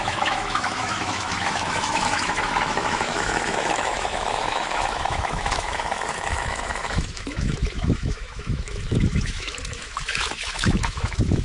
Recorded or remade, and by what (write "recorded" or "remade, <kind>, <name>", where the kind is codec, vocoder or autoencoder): remade, autoencoder, DAC-VAE